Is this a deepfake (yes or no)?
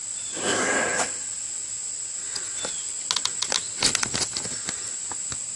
no